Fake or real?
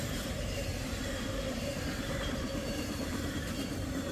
fake